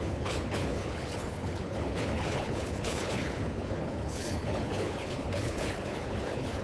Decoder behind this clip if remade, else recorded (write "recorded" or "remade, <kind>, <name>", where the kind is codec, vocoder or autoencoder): remade, codec, HILCodec